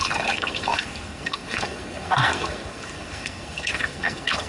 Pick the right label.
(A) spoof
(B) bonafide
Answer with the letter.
A